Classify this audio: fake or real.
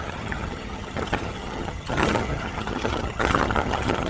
fake